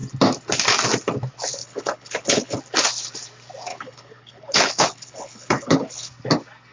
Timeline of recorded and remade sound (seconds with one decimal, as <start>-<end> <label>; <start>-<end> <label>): 0.0-1.6 recorded; 1.6-2.6 remade; 2.6-3.7 recorded; 3.7-6.1 remade; 6.1-6.7 recorded